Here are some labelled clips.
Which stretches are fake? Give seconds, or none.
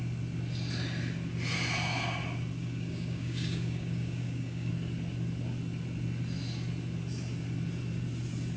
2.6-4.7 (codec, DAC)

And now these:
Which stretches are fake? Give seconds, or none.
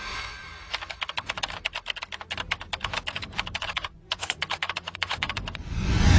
3.6-6.2 (vocoder, Vocos)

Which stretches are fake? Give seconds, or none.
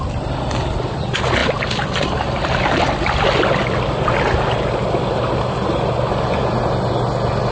none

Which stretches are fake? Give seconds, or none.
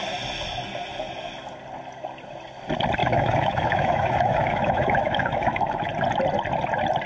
3.0-5.8 (autoencoder, DAC-VAE)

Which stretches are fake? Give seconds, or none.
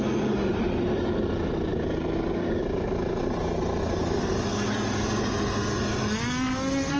none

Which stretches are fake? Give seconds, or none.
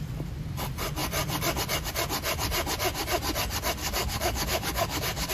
3.8-5.3 (codec, DAC)